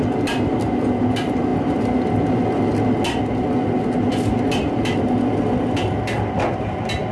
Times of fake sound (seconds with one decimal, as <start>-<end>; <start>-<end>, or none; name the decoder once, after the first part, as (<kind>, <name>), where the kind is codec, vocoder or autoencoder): none